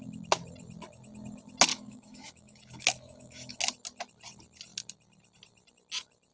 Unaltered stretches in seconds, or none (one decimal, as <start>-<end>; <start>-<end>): 0.0-1.7; 3.6-6.3